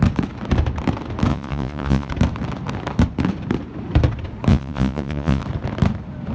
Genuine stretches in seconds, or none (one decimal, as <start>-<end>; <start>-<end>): 0.0-1.3; 2.1-4.5; 5.4-6.3